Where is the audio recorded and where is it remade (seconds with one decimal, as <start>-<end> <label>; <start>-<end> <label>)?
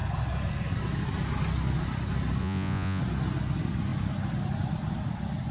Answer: 0.0-2.4 recorded; 2.4-3.0 remade; 3.0-5.5 recorded